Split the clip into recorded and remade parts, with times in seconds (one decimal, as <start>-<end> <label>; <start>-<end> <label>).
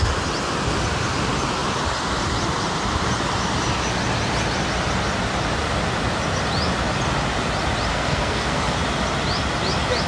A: 0.0-7.9 recorded; 7.9-8.8 remade; 8.8-10.1 recorded